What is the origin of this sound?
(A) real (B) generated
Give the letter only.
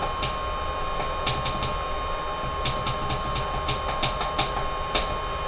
A